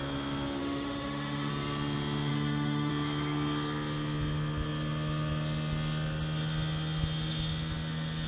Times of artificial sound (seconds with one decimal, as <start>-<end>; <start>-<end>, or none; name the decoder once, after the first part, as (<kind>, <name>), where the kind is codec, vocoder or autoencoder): 0.6-1.5 (autoencoder, DAC-VAE); 2.3-2.9